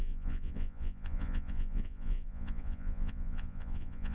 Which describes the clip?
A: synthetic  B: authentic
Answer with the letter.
A